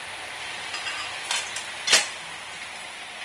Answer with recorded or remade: recorded